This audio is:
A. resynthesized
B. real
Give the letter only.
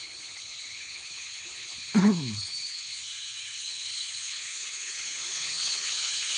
A